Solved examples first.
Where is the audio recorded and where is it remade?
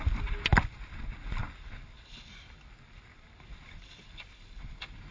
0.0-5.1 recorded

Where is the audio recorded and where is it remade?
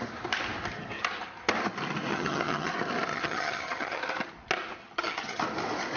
0.0-2.1 recorded; 2.1-2.7 remade; 2.7-3.1 recorded; 3.1-4.0 remade; 4.0-4.8 recorded; 4.8-5.4 remade; 5.4-6.0 recorded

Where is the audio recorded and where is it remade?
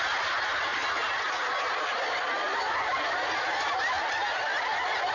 0.0-5.1 recorded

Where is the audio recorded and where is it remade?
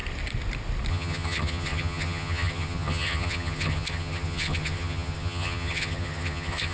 0.0-0.9 recorded; 0.9-6.7 remade